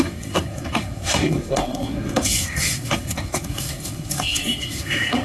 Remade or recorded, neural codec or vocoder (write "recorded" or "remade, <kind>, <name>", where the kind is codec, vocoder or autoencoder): remade, codec, SNAC